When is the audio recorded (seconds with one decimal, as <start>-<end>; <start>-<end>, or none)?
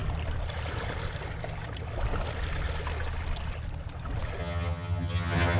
0.0-4.4